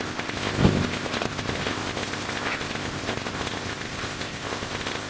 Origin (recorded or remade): remade